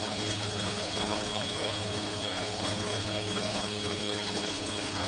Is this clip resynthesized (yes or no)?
yes